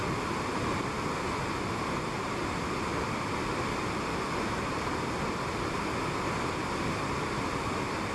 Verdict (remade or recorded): recorded